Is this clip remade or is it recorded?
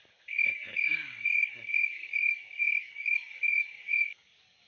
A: remade